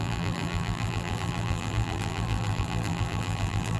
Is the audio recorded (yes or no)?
no